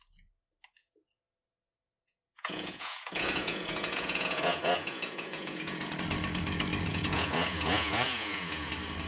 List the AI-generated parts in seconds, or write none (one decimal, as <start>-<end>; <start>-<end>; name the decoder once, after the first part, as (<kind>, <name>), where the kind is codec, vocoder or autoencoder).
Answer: 0.8-5.9 (vocoder, Vocos); 6.9-8.7